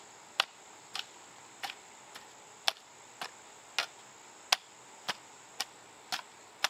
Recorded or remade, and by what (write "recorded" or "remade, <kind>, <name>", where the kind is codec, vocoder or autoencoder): recorded